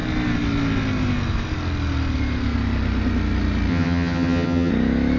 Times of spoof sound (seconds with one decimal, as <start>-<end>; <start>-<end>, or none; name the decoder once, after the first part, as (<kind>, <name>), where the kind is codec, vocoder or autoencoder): 3.7-4.7 (vocoder, HiFi-GAN)